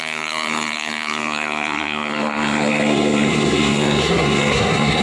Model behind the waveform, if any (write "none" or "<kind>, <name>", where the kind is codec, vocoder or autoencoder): codec, SNAC